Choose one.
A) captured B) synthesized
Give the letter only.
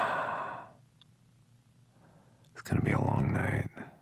A